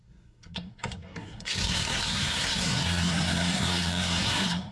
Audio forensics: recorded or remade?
remade